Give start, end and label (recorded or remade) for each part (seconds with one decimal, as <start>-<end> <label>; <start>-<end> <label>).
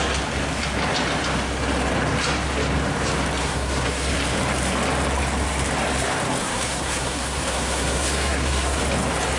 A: 0.0-3.4 recorded; 3.4-4.1 remade; 4.1-6.4 recorded; 6.4-8.8 remade; 8.8-9.4 recorded